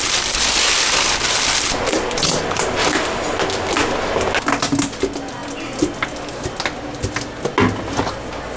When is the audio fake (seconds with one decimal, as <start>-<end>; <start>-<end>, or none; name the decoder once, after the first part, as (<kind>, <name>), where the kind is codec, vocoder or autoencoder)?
none